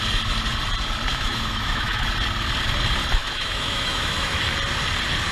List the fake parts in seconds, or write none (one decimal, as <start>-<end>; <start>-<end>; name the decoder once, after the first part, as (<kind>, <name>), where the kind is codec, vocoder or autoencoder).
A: 1.1-2.1 (autoencoder, DAC-VAE); 3.2-4.4